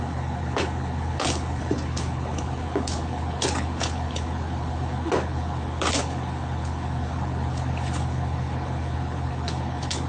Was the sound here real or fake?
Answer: fake